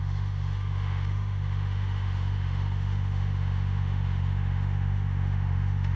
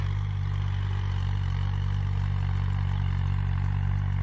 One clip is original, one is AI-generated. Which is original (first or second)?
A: second